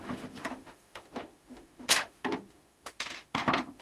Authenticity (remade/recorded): remade